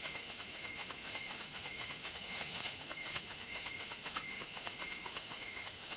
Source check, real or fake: fake